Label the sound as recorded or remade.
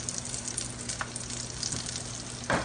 recorded